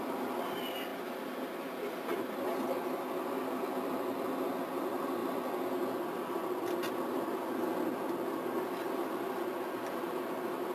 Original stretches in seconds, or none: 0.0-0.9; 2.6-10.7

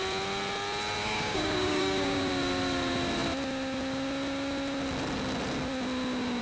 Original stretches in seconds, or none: 0.0-1.0; 2.3-6.4